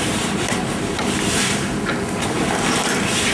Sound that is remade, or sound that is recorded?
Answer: recorded